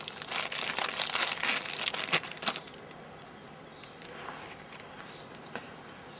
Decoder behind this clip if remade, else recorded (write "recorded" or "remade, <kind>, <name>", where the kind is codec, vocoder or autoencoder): remade, vocoder, BigVGAN v2